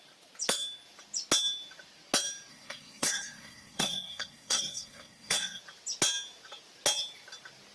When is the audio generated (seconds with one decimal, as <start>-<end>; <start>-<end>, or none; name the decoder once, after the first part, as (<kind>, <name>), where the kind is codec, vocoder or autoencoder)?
2.5-5.6 (codec, SNAC)